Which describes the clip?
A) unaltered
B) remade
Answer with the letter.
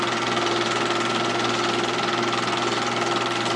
A